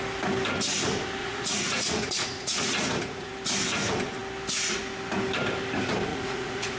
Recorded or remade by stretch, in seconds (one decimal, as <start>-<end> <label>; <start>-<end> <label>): 0.0-1.2 recorded; 1.2-3.3 remade; 3.3-6.1 recorded; 6.1-6.8 remade